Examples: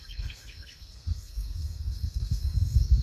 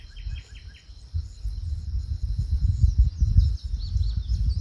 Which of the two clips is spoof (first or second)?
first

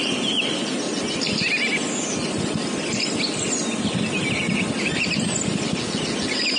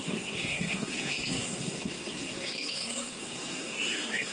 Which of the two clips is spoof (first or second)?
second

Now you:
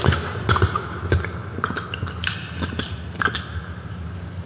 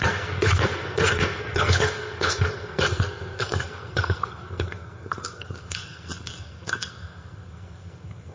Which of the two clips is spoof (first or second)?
second